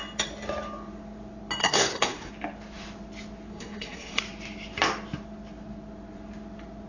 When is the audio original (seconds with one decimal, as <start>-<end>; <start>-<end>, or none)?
0.0-1.6; 2.3-3.5; 4.2-6.9